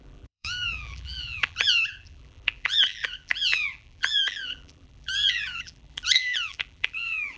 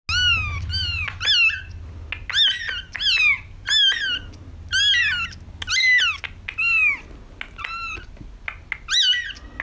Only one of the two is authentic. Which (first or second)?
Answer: second